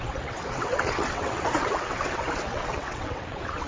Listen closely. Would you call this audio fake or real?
fake